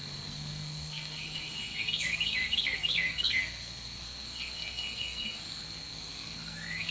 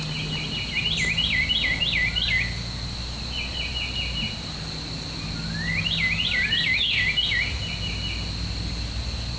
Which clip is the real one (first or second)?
second